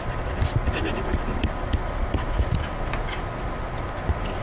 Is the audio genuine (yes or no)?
yes